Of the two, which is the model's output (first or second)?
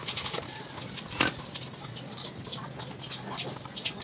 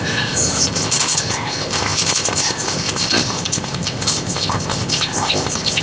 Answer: second